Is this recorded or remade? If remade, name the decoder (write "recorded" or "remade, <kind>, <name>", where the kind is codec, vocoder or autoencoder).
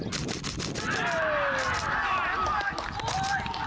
recorded